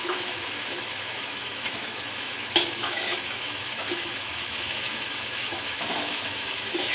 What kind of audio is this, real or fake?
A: fake